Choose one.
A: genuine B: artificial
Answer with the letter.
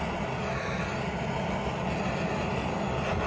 A